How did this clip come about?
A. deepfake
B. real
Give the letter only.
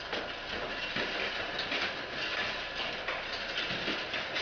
B